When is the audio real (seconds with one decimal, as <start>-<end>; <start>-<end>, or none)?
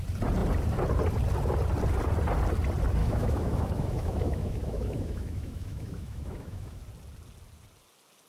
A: 0.0-3.0; 6.8-8.3